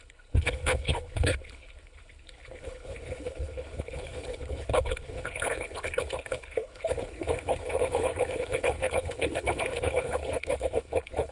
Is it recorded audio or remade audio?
remade